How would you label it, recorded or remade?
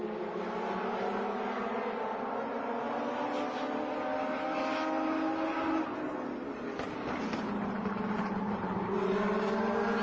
recorded